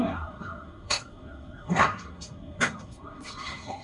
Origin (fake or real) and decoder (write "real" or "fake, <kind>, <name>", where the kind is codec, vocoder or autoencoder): fake, codec, SNAC